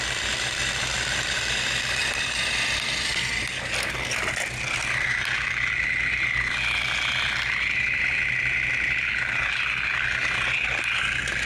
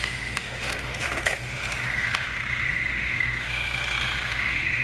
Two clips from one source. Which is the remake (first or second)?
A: second